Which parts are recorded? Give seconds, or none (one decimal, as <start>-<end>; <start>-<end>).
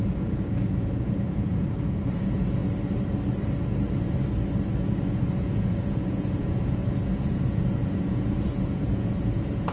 2.6-5.1